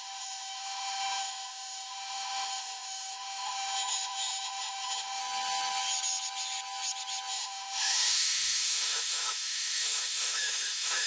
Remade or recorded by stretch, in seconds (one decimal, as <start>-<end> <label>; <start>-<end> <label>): 0.0-5.2 remade; 5.2-7.3 recorded; 7.3-11.1 remade